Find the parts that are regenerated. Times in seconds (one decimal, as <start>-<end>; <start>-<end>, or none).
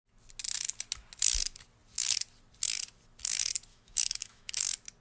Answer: 3.7-4.5